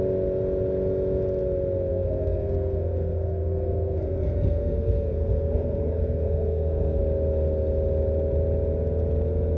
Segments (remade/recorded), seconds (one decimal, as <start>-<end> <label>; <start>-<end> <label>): 0.0-1.9 recorded; 1.9-7.0 remade; 7.0-9.6 recorded